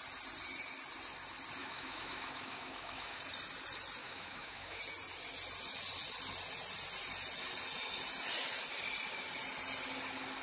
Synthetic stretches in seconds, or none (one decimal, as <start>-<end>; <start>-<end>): 1.6-3.2; 4.0-4.8